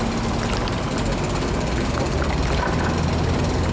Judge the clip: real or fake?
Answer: real